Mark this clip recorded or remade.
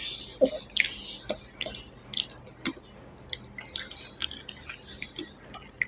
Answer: recorded